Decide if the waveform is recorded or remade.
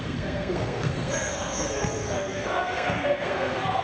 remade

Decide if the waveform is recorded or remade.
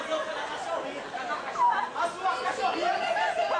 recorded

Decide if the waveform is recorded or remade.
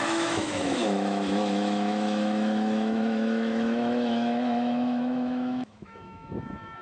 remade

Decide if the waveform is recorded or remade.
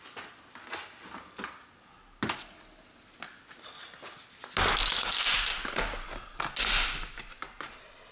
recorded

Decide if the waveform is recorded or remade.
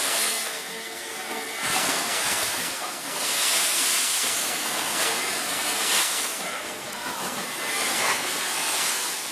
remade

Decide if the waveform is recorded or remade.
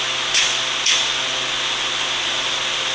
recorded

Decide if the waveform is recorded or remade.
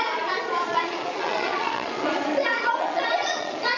remade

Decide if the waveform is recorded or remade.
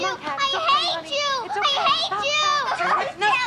recorded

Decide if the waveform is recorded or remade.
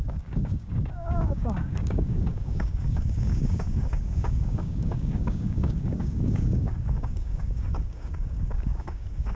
remade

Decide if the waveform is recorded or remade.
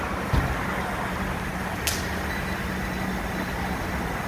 recorded